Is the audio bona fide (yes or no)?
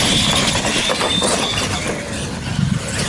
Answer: yes